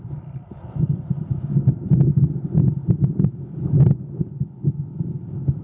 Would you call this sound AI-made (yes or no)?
no